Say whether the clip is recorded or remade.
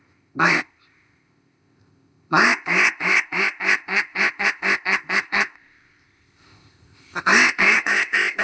remade